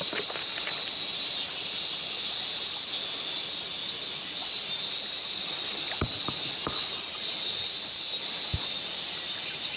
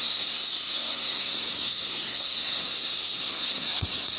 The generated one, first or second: second